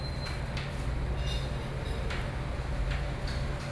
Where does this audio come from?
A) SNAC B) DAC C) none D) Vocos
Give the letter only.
C